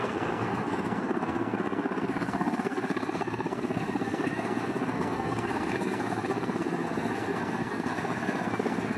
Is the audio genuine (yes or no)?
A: no